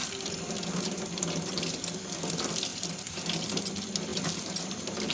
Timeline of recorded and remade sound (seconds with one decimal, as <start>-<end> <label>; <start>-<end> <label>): 0.0-1.0 remade; 1.0-2.7 recorded; 2.7-3.6 remade; 3.6-4.1 recorded; 4.1-5.1 remade